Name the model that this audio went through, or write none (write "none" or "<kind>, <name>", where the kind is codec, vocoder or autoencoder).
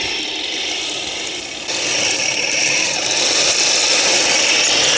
none